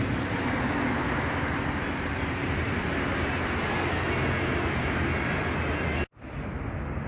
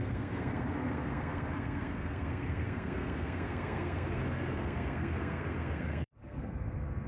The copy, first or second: second